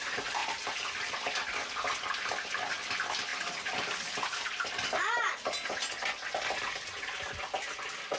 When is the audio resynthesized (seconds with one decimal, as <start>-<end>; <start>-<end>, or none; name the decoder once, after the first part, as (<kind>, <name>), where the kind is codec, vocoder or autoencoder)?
3.3-4.4 (vocoder, BigVGAN v2)